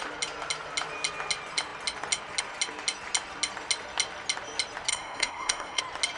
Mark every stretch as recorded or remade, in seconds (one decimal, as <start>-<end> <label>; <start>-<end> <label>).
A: 0.0-4.9 recorded; 4.9-5.8 remade; 5.8-6.2 recorded

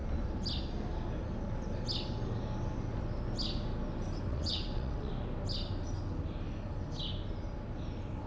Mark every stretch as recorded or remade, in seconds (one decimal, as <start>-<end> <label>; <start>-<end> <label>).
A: 0.0-4.3 recorded; 4.3-5.1 remade; 5.1-8.3 recorded

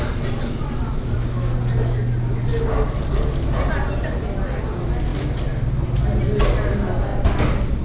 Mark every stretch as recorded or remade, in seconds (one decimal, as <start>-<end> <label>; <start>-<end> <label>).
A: 0.0-7.8 recorded

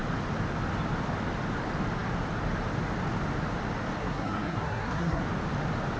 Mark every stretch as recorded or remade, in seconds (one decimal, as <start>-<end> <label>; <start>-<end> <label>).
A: 0.0-4.0 recorded; 4.0-5.2 remade; 5.2-6.0 recorded

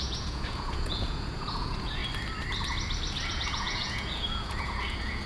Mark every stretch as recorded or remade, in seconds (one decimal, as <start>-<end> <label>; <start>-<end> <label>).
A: 0.0-2.0 remade; 2.0-3.3 recorded; 3.3-5.3 remade

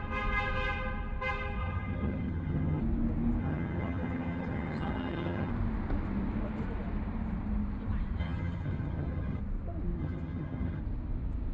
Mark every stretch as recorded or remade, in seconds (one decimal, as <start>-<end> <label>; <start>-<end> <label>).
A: 0.0-1.6 recorded; 1.6-2.8 remade; 2.8-3.4 recorded; 3.4-5.5 remade; 5.5-8.2 recorded; 8.2-9.4 remade; 9.4-10.0 recorded; 10.0-10.8 remade; 10.8-11.5 recorded